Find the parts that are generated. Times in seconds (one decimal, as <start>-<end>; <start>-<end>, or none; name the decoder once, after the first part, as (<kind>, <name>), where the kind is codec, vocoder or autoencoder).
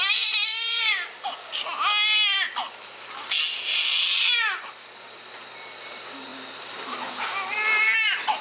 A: 0.0-1.6 (vocoder, BigVGAN v2); 5.8-6.3; 7.8-8.4